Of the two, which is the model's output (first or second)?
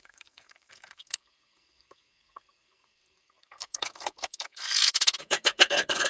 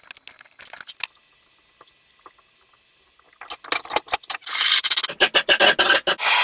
first